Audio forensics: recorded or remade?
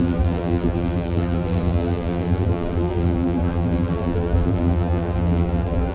remade